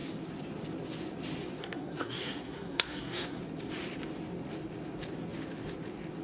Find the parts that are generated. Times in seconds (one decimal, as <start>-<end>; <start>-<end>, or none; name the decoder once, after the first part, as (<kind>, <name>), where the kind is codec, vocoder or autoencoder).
1.6-3.4 (codec, SNAC)